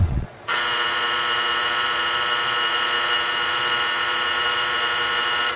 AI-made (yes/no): yes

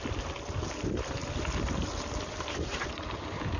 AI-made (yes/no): no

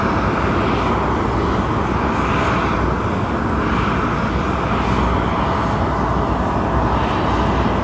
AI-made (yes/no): no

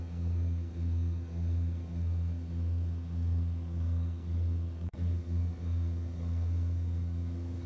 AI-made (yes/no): yes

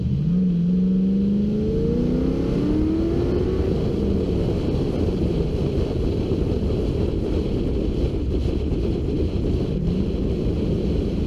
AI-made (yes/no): no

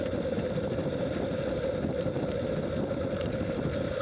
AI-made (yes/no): no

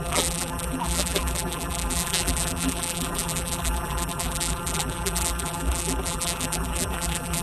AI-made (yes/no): yes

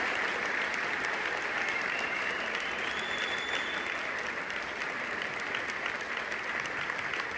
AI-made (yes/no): no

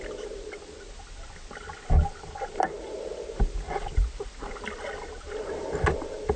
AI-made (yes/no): no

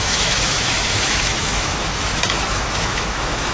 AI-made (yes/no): yes